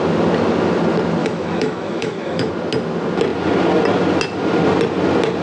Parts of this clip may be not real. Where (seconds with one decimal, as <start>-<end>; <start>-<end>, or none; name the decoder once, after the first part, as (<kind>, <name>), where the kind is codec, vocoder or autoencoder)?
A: 1.2-2.5 (autoencoder, DAC-VAE)